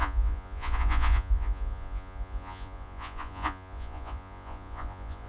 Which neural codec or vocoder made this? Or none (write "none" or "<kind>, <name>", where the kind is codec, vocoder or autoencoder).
vocoder, Vocos